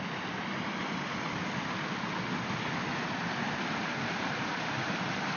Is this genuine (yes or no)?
yes